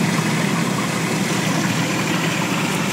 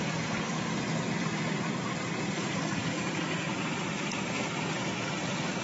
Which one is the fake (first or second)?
first